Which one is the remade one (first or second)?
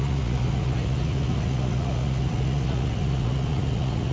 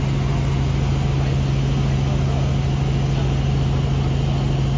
first